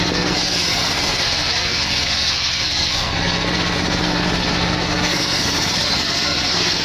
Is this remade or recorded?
remade